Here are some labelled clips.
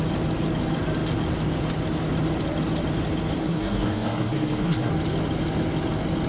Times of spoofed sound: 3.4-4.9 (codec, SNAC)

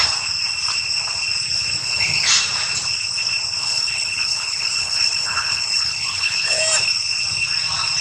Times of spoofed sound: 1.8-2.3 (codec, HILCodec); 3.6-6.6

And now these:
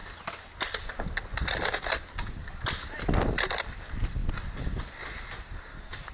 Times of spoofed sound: none

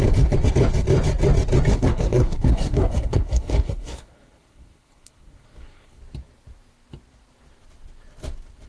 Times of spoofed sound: 1.7-6.0 (codec, SNAC)

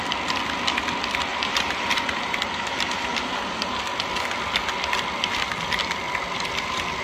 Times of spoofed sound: 1.3-3.8 (vocoder, BigVGAN v2)

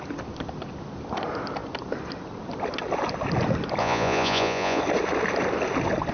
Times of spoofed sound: 3.8-4.8 (vocoder, Vocos)

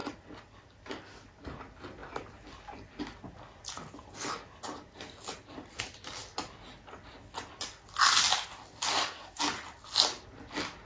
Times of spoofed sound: 8.9-9.4 (codec, SNAC)